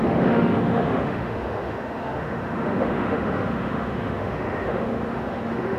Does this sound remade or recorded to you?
remade